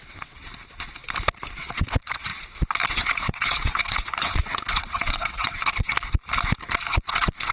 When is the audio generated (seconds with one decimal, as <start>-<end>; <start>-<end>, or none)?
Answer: 0.0-0.5; 1.6-2.3; 2.9-5.9; 6.9-7.5